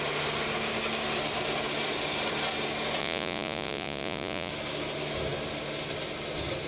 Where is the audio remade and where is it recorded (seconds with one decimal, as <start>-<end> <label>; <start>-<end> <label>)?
0.0-3.0 recorded; 3.0-4.5 remade; 4.5-6.7 recorded